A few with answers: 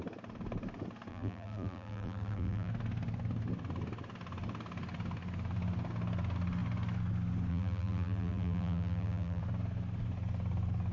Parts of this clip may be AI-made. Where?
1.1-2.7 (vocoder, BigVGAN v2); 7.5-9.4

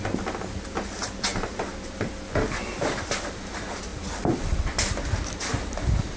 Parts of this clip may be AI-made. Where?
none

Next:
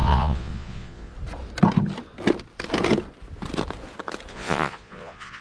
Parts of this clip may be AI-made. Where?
0.0-1.1 (vocoder, Vocos); 4.3-5.4